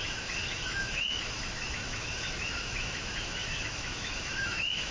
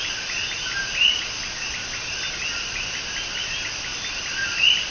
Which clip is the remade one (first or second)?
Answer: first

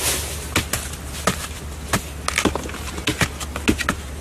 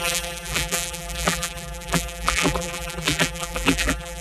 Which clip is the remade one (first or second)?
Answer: second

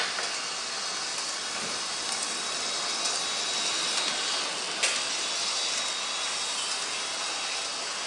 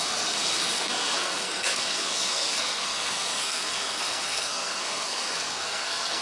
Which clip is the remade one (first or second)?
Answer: second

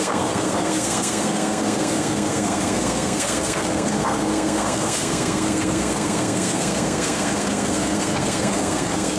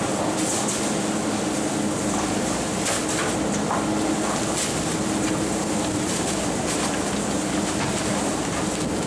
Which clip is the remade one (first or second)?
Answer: first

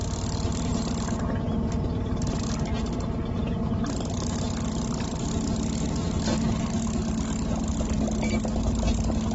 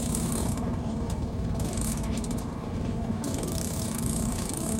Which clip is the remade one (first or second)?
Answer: second